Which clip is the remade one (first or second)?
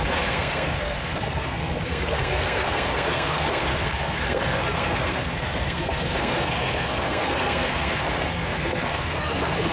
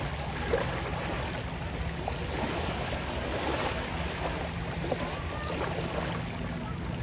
first